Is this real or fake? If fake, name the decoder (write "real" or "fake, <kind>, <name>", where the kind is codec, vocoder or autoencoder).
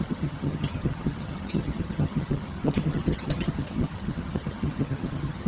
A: fake, vocoder, HiFi-GAN